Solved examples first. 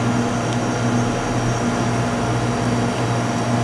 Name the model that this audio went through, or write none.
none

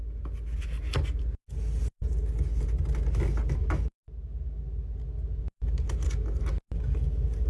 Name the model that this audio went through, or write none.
none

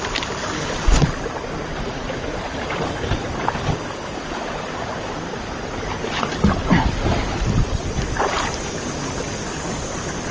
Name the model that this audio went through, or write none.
none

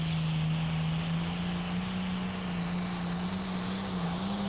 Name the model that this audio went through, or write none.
none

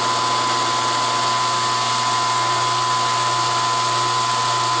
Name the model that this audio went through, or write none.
none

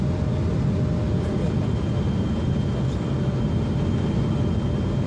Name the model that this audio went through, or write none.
none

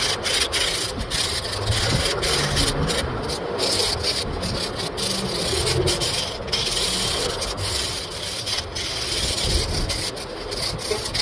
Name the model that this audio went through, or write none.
none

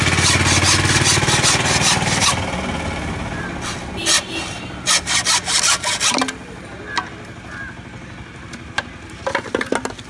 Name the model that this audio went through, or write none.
none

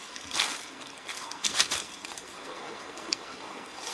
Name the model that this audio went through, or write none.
codec, SNAC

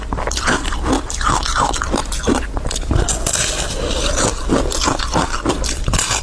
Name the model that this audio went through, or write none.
none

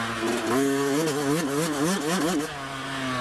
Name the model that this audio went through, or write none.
none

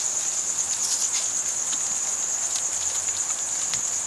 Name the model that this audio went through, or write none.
none